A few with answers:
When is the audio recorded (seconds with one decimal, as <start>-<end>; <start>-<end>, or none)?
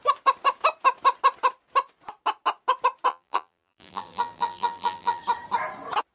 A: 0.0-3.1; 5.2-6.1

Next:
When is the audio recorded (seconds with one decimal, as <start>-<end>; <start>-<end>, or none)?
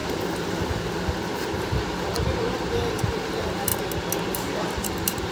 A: 0.0-3.0; 3.7-5.3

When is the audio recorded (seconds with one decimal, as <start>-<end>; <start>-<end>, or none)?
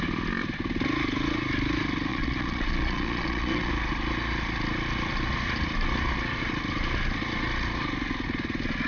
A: 0.0-2.1; 3.7-8.9